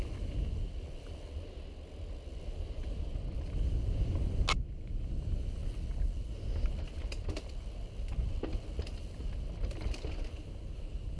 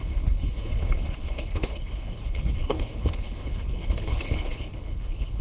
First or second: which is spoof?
second